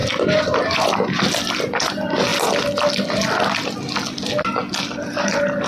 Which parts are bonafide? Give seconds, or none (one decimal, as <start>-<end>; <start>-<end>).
0.0-5.7